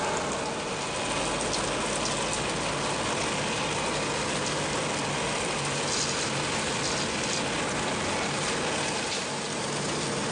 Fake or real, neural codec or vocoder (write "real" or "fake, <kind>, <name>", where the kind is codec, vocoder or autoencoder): real